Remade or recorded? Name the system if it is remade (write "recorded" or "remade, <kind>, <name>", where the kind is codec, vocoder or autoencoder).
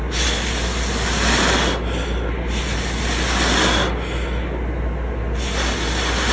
recorded